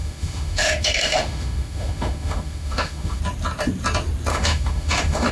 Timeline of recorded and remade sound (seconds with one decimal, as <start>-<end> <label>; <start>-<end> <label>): 0.0-3.2 remade; 3.2-4.3 recorded; 4.3-5.3 remade